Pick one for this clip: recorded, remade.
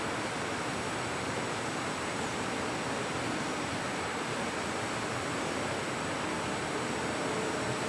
recorded